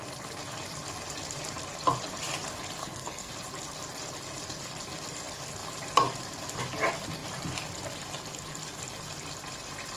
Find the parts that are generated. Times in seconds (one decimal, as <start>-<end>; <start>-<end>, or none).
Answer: 2.8-3.3